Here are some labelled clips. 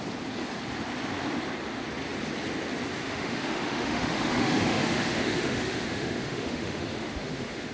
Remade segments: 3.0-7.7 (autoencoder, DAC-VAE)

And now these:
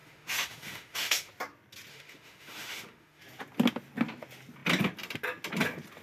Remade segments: 0.0-1.3 (autoencoder, DAC-VAE); 1.9-3.2

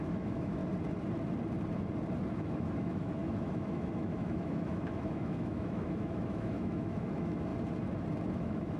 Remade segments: 0.0-0.6 (autoencoder, DAC-VAE); 2.3-7.5; 8.3-8.8

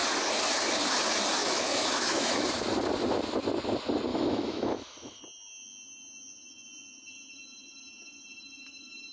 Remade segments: 1.4-2.3 (autoencoder, DAC-VAE); 4.1-5.2

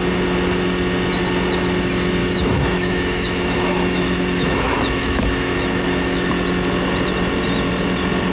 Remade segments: 2.2-6.3 (autoencoder, DAC-VAE)